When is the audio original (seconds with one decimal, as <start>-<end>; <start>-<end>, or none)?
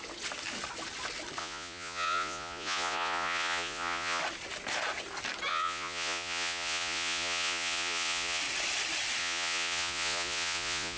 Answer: 0.0-1.4; 4.2-5.5; 8.4-9.2